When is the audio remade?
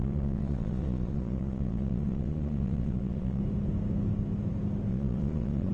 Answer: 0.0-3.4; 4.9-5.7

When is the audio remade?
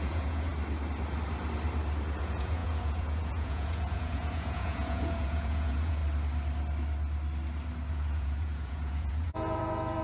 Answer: 0.0-0.5; 2.2-6.0; 7.9-10.0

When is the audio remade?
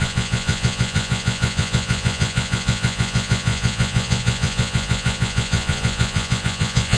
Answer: 0.0-7.0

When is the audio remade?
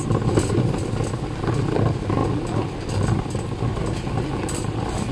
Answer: none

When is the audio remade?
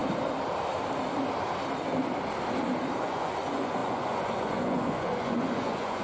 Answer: 3.0-6.0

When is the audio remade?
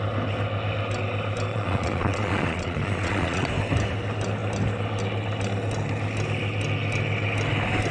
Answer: 1.5-3.5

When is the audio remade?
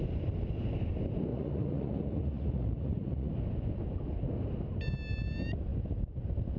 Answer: 1.3-3.3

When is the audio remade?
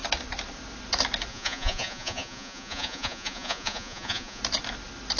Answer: 1.3-4.4